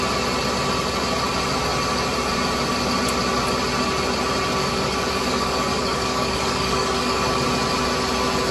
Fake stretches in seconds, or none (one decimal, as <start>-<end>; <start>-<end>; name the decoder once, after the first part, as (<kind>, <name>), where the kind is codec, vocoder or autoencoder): 4.6-7.4 (codec, DAC)